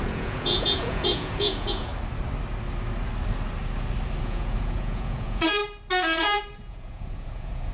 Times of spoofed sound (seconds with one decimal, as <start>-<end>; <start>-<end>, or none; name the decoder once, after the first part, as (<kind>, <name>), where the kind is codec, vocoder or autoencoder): 0.0-1.9 (vocoder, Vocos); 4.2-5.6; 6.2-7.7

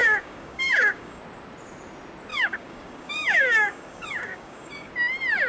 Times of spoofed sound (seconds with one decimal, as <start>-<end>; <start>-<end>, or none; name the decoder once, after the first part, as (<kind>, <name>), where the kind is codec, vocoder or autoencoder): 0.0-1.2 (codec, DAC); 2.3-4.9

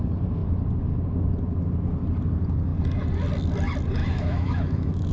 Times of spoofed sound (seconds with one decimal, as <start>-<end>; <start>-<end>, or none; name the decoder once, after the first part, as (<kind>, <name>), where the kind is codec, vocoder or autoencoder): 4.0-5.1 (autoencoder, DAC-VAE)

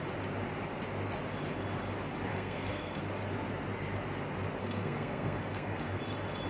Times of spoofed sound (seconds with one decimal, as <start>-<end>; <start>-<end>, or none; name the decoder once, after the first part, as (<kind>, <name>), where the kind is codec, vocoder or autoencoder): 2.3-3.0 (codec, SNAC); 4.6-6.0